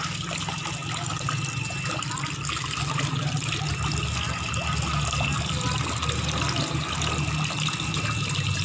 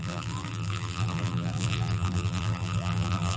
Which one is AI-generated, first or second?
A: second